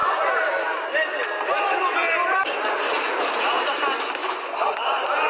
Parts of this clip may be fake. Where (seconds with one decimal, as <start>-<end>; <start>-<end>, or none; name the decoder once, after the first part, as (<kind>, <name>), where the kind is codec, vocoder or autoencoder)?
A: 4.2-4.7 (vocoder, Vocos)